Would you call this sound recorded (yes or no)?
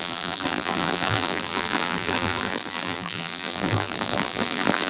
no